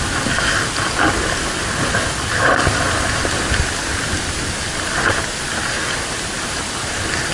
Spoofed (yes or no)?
no